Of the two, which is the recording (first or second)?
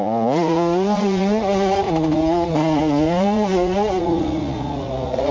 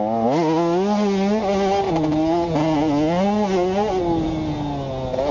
second